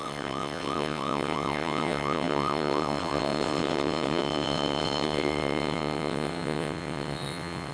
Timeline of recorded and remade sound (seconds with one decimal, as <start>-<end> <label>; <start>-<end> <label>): 0.0-7.7 remade